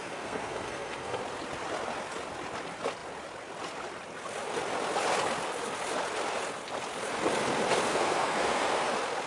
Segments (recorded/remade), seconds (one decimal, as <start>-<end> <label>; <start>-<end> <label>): 0.0-1.2 remade; 1.2-7.9 recorded; 7.9-8.9 remade; 8.9-9.3 recorded

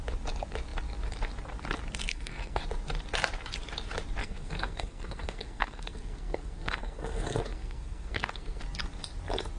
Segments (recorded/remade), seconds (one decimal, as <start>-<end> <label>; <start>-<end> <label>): 0.0-2.1 recorded; 2.1-2.6 remade; 2.6-4.2 recorded; 4.2-8.6 remade; 8.6-9.6 recorded

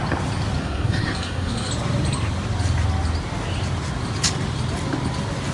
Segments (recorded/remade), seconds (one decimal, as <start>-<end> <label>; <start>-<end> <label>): 0.0-0.6 recorded; 0.6-1.7 remade; 1.7-5.5 recorded

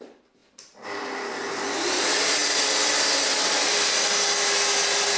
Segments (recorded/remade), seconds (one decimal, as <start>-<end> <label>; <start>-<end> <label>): 0.0-5.2 recorded

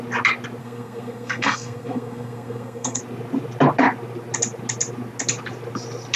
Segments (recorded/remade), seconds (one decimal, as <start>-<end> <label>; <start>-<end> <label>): 0.0-0.6 recorded; 0.6-3.0 remade; 3.0-6.2 recorded

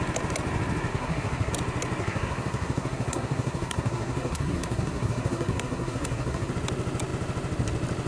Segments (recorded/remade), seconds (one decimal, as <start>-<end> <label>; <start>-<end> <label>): 0.0-0.9 recorded; 0.9-1.5 remade; 1.5-2.0 recorded; 2.0-6.5 remade; 6.5-8.1 recorded

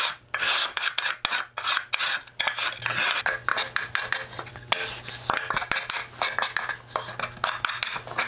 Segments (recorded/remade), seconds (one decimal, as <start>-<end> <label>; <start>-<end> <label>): 0.0-0.4 recorded; 0.4-0.9 remade; 0.9-8.3 recorded

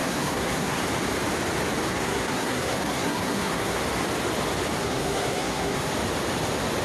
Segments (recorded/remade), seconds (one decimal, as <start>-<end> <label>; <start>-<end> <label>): 0.0-0.8 remade; 0.8-1.9 recorded; 1.9-3.8 remade; 3.8-4.8 recorded; 4.8-5.9 remade; 5.9-6.8 recorded